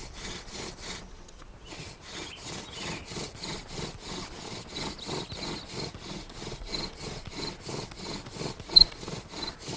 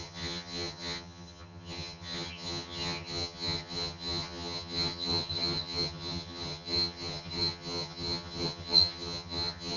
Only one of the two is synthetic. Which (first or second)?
second